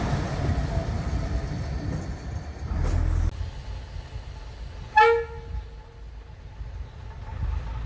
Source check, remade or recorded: recorded